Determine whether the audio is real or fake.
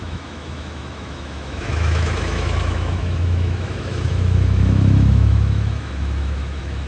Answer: fake